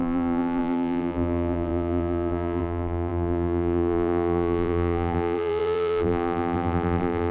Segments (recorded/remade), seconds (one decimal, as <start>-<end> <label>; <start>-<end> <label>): 0.0-7.3 remade